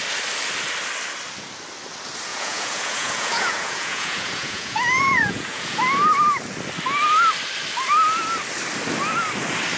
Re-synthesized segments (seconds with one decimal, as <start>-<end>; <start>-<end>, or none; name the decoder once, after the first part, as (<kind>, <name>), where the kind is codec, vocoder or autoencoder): 2.3-5.8 (vocoder, Vocos)